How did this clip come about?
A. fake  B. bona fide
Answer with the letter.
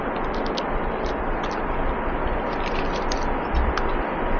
B